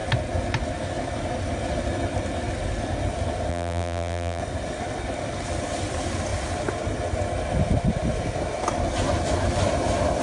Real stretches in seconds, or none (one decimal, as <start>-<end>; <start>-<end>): 0.0-3.5; 4.4-10.2